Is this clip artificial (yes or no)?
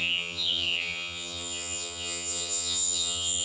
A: yes